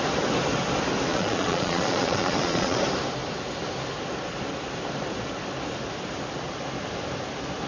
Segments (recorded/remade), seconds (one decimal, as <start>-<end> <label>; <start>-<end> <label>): 0.0-1.1 recorded; 1.1-2.8 remade; 2.8-7.7 recorded